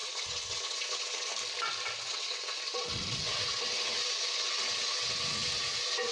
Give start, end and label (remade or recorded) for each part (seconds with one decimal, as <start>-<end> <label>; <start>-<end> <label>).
0.0-1.3 remade; 1.3-2.0 recorded; 2.0-6.1 remade